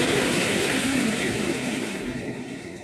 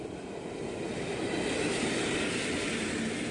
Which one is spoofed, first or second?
first